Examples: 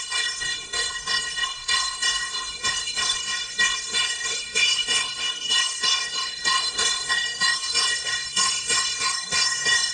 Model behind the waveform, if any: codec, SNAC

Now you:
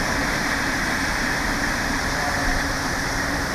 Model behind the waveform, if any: vocoder, BigVGAN v2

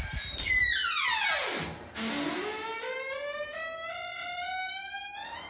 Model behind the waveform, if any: none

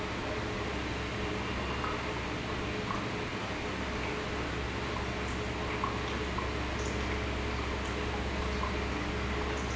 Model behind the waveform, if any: none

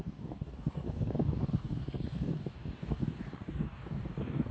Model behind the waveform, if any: codec, DAC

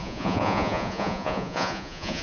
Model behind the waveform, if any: vocoder, Vocos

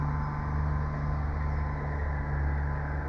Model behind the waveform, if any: none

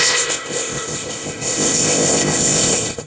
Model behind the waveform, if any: codec, ZipCodec